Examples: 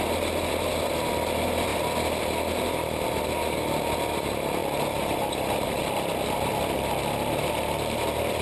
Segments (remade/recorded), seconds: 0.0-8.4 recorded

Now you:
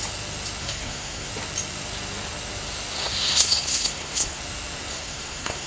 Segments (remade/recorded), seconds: 0.0-0.6 recorded; 0.6-1.3 remade; 1.3-3.0 recorded; 3.0-4.4 remade; 4.4-4.9 recorded; 4.9-5.7 remade